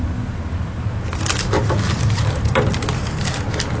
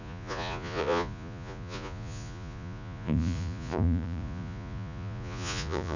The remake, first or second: second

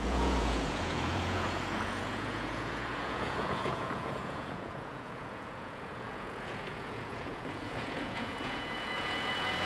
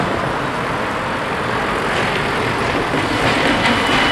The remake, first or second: first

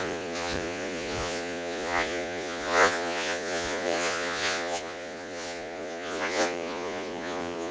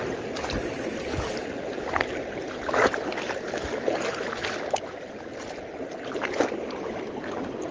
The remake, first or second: first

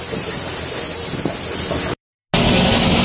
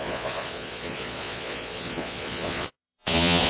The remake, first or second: second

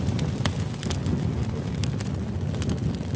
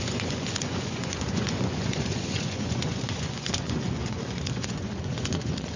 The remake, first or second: second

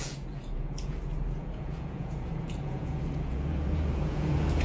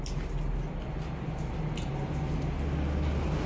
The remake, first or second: first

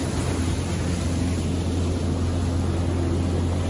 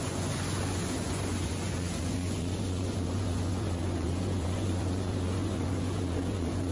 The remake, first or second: second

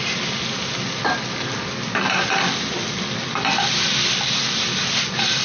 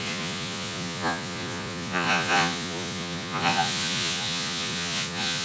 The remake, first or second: second